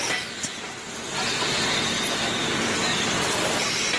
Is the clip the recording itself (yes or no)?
yes